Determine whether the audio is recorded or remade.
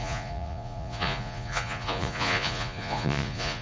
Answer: remade